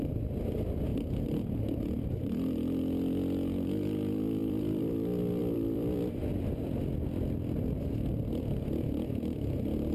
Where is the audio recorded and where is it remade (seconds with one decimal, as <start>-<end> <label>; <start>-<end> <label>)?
0.0-0.9 recorded; 0.9-1.4 remade; 1.4-4.4 recorded; 4.4-4.9 remade; 4.9-5.4 recorded; 5.4-6.8 remade; 6.8-9.9 recorded